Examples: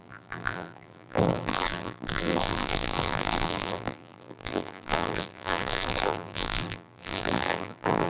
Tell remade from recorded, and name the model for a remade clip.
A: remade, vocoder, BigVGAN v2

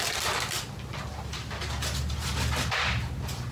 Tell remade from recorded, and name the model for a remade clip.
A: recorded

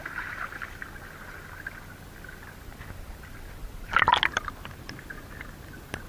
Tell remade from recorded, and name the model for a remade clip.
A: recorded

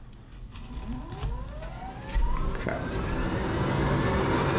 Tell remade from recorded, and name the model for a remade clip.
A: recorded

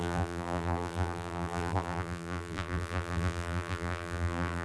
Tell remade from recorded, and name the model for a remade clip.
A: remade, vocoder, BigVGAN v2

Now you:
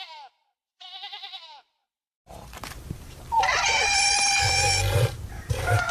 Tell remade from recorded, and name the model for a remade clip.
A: remade, vocoder, BigVGAN v2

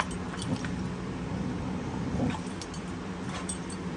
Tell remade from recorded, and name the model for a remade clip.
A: remade, vocoder, BigVGAN v2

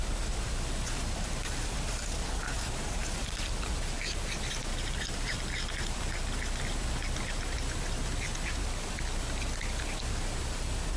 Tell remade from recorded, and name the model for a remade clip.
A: remade, vocoder, BigVGAN v2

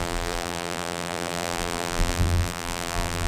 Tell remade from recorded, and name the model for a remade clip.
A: remade, vocoder, BigVGAN v2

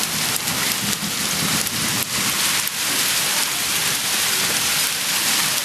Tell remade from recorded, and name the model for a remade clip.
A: recorded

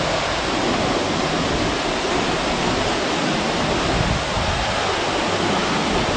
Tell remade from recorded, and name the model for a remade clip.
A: recorded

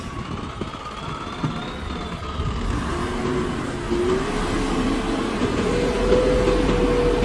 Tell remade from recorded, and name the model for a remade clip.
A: recorded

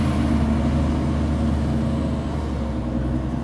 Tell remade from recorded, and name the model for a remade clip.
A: recorded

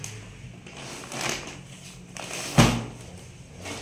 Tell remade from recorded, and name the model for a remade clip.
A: recorded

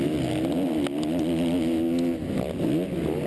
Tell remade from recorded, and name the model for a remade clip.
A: recorded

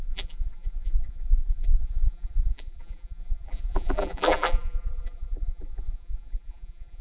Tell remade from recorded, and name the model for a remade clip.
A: remade, vocoder, BigVGAN v2